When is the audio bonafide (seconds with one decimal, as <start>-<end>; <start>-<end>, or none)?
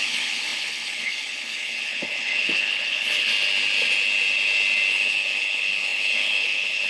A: 3.3-4.9